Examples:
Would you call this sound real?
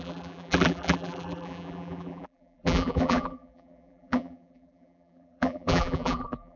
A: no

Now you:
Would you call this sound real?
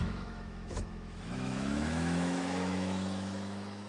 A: no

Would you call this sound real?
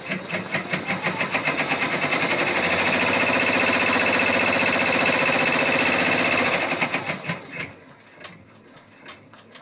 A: yes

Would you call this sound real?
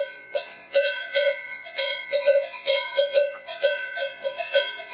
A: no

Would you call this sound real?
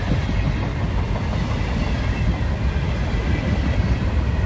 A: yes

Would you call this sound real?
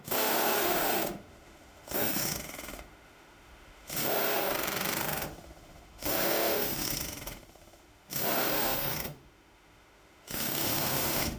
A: no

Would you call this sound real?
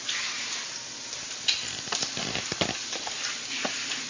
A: yes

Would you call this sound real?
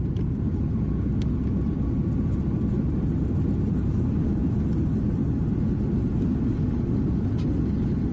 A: yes